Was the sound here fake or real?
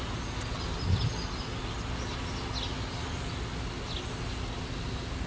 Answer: real